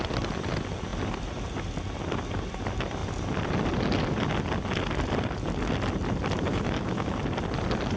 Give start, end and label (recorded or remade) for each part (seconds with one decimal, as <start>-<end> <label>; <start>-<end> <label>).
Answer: 0.0-6.5 recorded; 6.5-7.2 remade; 7.2-8.0 recorded